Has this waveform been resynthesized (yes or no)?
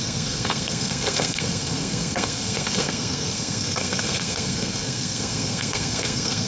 yes